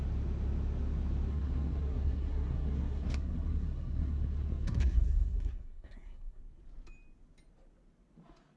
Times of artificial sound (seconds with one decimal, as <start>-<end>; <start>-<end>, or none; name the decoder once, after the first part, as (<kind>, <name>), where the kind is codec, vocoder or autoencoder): 1.3-6.4 (codec, SNAC)